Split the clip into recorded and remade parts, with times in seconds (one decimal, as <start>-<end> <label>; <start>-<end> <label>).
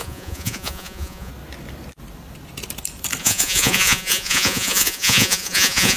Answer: 0.0-1.3 remade; 1.3-3.2 recorded; 3.2-6.0 remade